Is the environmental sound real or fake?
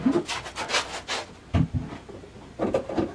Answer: real